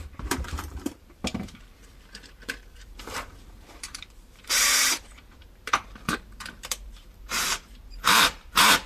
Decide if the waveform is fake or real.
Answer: fake